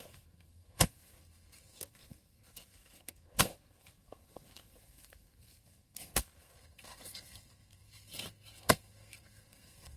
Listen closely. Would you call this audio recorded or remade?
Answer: remade